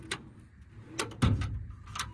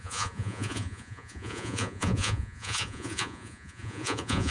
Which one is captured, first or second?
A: first